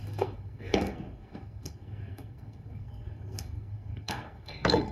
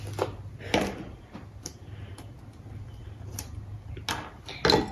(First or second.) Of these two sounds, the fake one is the first